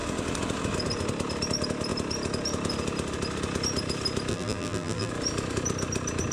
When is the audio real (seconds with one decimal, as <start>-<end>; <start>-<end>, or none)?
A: 0.0-4.3; 5.1-6.3